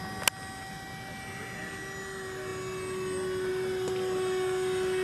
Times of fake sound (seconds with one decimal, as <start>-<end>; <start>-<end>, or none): none